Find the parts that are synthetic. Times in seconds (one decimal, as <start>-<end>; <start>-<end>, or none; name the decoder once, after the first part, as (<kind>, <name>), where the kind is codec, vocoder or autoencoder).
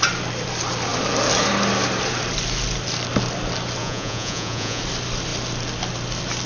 3.8-4.8 (vocoder, Vocos)